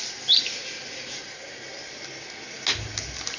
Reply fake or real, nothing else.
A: real